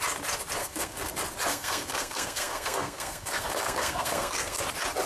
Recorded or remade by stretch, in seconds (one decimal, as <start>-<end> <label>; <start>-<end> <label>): 0.0-0.6 recorded; 0.6-1.1 remade; 1.1-1.5 recorded; 1.5-4.6 remade; 4.6-5.1 recorded